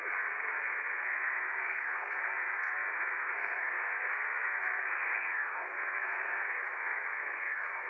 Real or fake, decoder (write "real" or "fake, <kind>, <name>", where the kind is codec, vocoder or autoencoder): fake, codec, SNAC